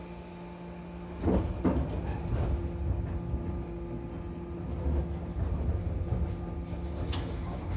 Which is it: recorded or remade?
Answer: recorded